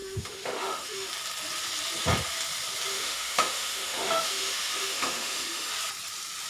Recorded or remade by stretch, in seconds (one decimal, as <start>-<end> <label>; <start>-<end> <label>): 0.0-1.1 remade; 1.1-2.9 recorded; 2.9-5.7 remade; 5.7-6.5 recorded